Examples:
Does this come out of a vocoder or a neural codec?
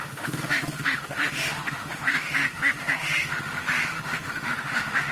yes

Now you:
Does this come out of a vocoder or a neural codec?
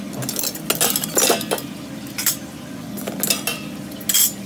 no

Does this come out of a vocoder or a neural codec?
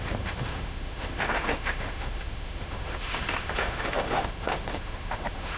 yes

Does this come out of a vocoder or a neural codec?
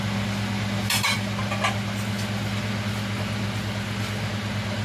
no